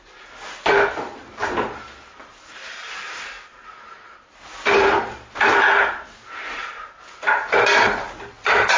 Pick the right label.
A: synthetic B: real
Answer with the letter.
B